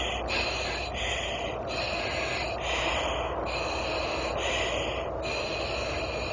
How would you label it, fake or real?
real